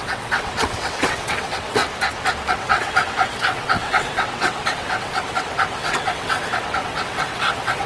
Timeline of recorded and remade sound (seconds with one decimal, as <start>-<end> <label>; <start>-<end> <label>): 0.0-1.8 remade; 1.8-2.5 recorded; 2.5-7.9 remade